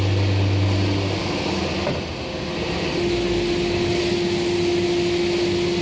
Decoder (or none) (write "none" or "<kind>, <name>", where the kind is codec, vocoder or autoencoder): none